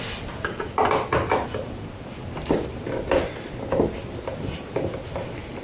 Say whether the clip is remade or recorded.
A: recorded